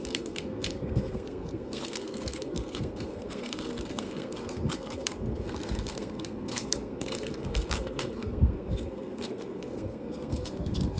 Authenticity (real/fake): fake